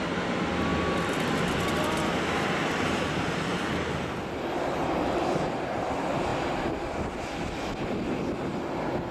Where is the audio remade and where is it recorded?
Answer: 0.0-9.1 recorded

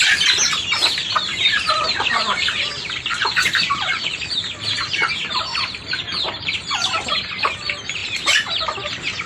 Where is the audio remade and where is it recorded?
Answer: 0.0-1.0 recorded; 1.0-5.1 remade; 5.1-5.5 recorded; 5.5-6.0 remade; 6.0-8.0 recorded; 8.0-8.6 remade; 8.6-9.3 recorded

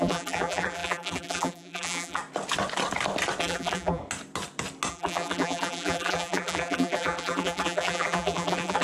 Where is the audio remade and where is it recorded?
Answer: 0.0-2.2 remade; 2.2-3.4 recorded; 3.4-4.0 remade; 4.0-4.9 recorded; 4.9-8.8 remade

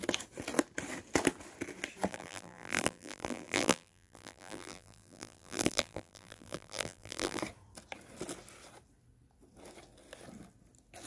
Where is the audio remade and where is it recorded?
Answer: 0.0-2.1 recorded; 2.1-7.4 remade; 7.4-11.1 recorded